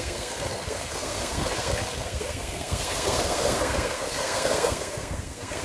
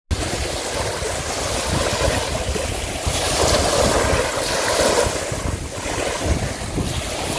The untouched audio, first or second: second